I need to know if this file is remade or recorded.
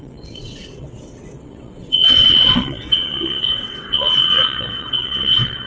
remade